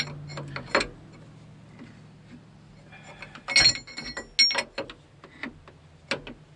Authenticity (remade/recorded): recorded